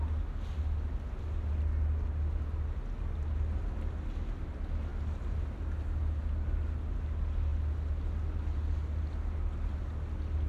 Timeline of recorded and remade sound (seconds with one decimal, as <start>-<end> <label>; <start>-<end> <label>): 0.0-10.5 recorded